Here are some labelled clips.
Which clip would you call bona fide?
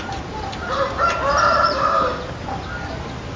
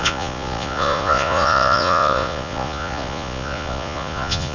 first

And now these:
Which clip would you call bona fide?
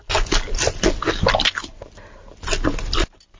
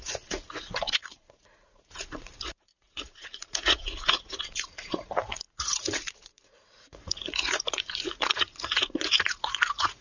first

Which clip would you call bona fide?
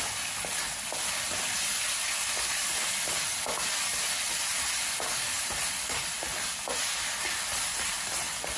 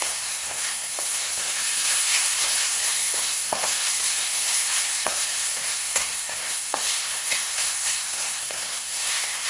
first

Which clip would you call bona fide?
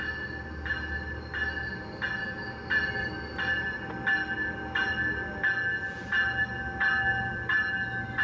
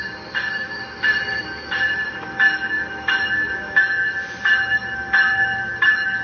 first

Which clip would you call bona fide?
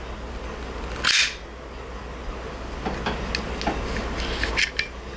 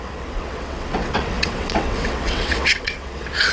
first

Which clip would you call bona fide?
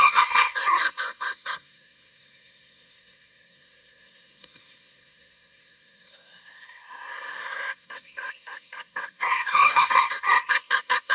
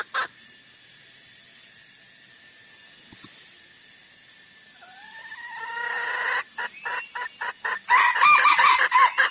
second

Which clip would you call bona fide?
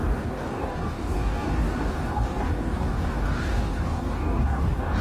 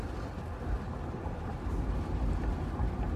second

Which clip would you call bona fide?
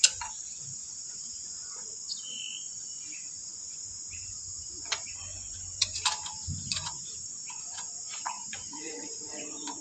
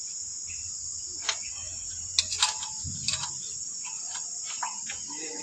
second